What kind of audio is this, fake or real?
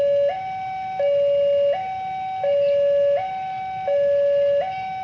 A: real